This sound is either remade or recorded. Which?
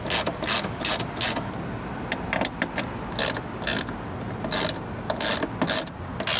recorded